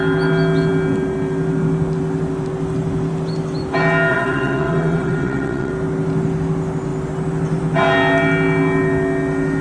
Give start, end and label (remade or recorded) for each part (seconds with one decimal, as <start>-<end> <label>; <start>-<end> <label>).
0.0-4.1 recorded; 4.1-5.7 remade; 5.7-9.6 recorded